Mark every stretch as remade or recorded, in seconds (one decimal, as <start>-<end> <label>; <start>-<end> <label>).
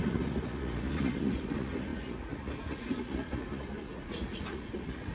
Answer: 0.0-5.1 remade